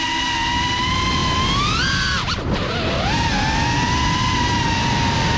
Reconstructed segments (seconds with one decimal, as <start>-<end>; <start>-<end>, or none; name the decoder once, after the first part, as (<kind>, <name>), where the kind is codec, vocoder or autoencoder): none